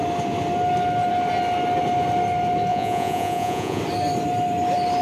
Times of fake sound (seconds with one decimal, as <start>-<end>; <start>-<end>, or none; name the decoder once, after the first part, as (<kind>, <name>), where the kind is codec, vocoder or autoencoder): 2.7-3.8 (vocoder, Vocos)